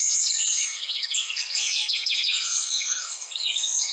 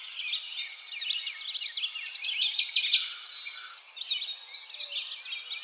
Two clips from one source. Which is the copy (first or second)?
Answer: first